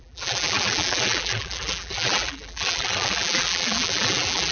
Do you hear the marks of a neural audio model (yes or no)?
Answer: yes